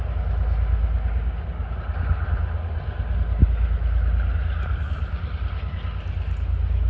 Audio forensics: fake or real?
real